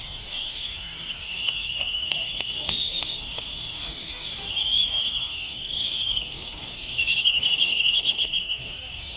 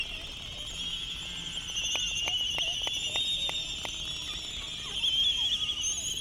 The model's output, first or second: first